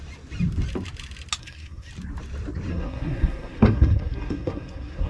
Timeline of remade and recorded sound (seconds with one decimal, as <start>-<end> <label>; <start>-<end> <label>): 0.0-1.4 recorded; 1.4-1.9 remade; 1.9-2.7 recorded; 2.7-5.1 remade